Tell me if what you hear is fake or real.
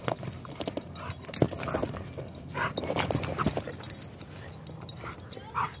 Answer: real